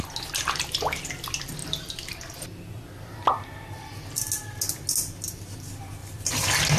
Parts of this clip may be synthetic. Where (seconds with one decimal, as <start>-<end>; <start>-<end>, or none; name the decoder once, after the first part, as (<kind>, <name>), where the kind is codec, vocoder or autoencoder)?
1.6-2.4 (vocoder, BigVGAN v2); 6.0-6.8